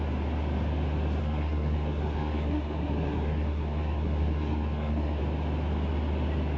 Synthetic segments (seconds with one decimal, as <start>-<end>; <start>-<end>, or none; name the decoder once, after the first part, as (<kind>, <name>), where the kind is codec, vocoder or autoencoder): 1.2-5.2 (codec, SNAC)